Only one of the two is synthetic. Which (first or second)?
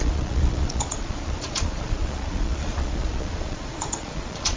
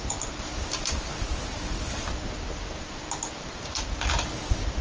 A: first